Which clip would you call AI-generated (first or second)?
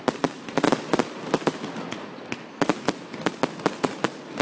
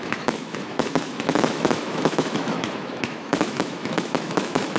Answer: second